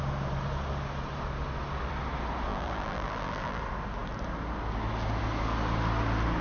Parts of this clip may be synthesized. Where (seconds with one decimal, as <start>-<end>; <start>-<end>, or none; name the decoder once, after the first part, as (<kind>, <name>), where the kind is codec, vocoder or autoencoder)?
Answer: 2.5-3.6 (vocoder, BigVGAN v2)